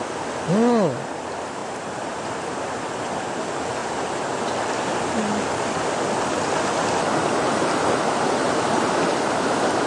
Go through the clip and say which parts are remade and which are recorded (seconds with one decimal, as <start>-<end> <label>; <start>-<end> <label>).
0.0-1.6 recorded; 1.6-2.8 remade; 2.8-3.8 recorded; 3.8-4.3 remade; 4.3-9.9 recorded